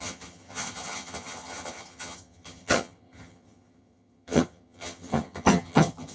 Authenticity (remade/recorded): remade